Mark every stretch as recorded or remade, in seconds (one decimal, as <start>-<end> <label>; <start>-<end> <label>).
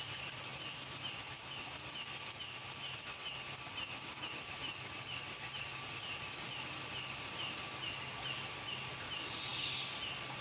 0.0-0.5 recorded; 0.5-1.0 remade; 1.0-5.7 recorded; 5.7-7.8 remade; 7.8-10.4 recorded